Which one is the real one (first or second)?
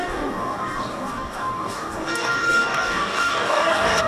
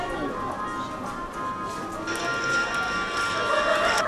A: second